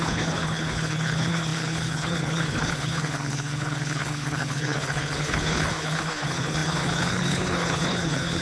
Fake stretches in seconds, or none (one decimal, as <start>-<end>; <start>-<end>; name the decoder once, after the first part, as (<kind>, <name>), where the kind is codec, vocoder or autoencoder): 0.0-8.4 (codec, HILCodec)